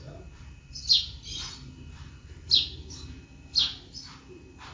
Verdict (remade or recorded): remade